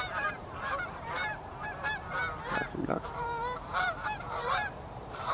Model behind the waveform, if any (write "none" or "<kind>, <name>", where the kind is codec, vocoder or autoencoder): vocoder, BigVGAN v2